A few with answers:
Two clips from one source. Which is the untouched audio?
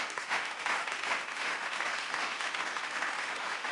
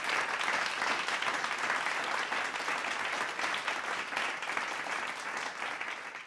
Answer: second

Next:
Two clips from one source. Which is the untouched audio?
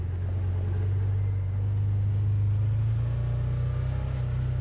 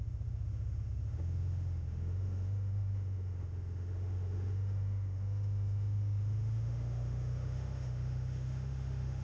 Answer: first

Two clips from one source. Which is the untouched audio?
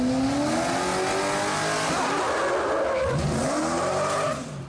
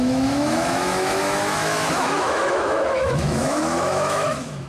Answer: first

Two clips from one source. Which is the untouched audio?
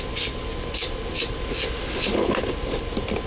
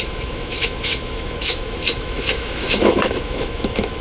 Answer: first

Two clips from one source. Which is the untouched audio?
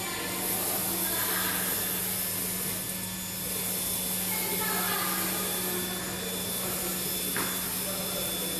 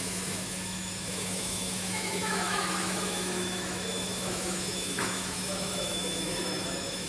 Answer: first